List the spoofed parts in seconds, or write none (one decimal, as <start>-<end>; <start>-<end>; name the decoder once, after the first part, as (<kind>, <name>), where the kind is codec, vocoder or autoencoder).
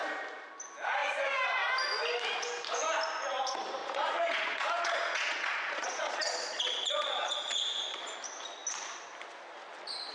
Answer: 3.8-8.2 (vocoder, Vocos)